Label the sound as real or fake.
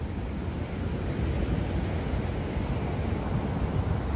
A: real